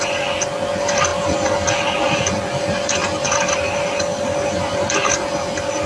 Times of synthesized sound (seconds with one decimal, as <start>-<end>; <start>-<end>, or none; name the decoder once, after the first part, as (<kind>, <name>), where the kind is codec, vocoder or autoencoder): none